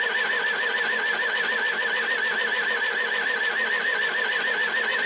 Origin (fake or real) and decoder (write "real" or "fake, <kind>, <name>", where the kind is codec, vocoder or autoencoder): real